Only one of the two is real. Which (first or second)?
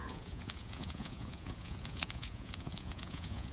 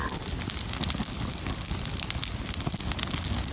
second